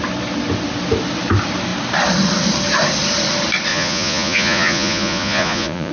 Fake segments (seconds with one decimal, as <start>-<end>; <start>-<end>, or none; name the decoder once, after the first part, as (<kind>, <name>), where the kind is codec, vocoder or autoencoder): 3.7-5.9 (vocoder, Vocos)